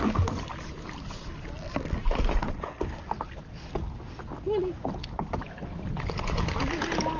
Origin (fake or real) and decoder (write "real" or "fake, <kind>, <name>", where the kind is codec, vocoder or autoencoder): real